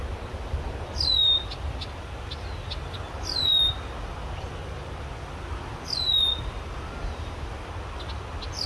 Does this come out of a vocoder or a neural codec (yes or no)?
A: no